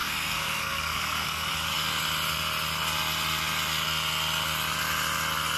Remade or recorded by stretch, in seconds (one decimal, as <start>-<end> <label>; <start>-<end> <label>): 0.0-1.5 remade; 1.5-5.6 recorded

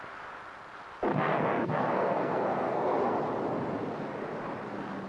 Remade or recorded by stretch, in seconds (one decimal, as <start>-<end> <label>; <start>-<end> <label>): 0.0-1.1 recorded; 1.1-3.2 remade; 3.2-5.1 recorded

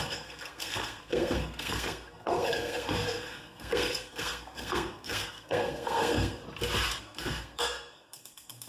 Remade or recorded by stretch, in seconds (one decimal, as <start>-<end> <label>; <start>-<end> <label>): 0.0-6.4 remade; 6.4-7.0 recorded; 7.0-8.7 remade

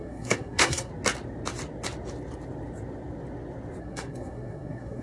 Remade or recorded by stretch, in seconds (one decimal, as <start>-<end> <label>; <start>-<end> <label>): 0.0-0.9 remade; 0.9-3.8 recorded; 3.8-5.0 remade

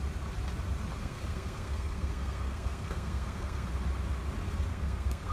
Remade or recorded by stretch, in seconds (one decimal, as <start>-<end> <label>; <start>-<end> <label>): 0.0-1.0 recorded; 1.0-3.7 remade; 3.7-4.7 recorded; 4.7-5.3 remade

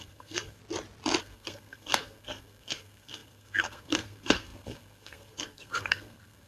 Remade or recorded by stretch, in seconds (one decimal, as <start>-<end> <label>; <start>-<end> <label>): 0.0-0.6 remade; 0.6-1.2 recorded; 1.2-6.5 remade

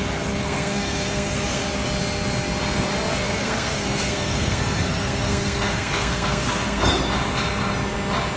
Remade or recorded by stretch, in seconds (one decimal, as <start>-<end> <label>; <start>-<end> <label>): 0.0-0.4 recorded; 0.4-1.7 remade; 1.7-3.2 recorded; 3.2-7.0 remade; 7.0-8.4 recorded

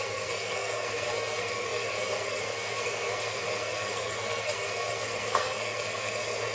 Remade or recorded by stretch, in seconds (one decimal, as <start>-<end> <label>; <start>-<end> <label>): 0.0-6.5 remade